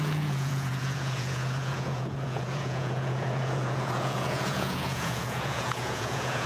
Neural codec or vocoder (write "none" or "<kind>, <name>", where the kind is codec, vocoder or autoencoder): vocoder, Vocos